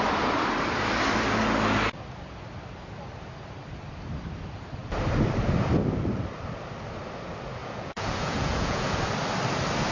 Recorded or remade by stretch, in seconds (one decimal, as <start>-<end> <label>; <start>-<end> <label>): 0.0-7.6 recorded; 7.6-9.0 remade; 9.0-9.9 recorded